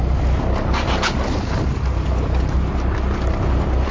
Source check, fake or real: real